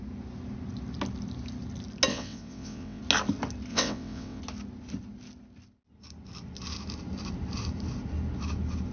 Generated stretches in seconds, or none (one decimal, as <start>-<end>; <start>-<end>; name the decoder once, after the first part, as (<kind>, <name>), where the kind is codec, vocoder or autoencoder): 2.1-3.0 (vocoder, WaveNeXt); 3.7-4.4